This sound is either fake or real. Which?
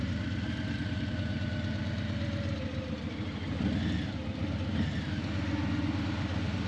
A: real